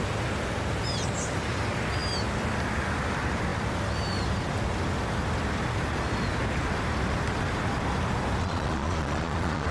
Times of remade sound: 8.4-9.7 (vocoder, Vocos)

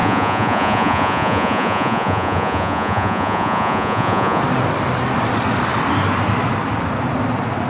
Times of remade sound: 0.0-4.4 (vocoder, Vocos)

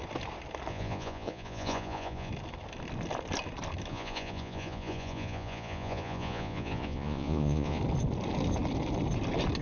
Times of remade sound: 0.7-2.3 (vocoder, Vocos); 3.9-7.8

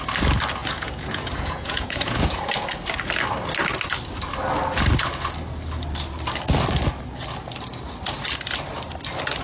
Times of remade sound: 0.6-2.4 (vocoder, Vocos)

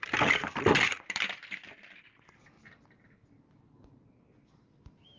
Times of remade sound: none

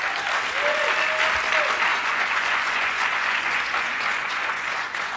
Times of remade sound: 1.9-5.2 (vocoder, Vocos)

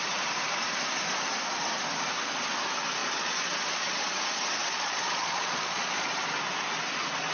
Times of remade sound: 3.0-4.1 (vocoder, Vocos); 4.6-6.1

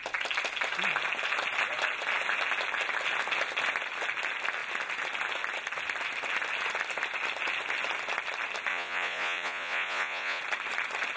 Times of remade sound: 8.7-10.4 (vocoder, Vocos)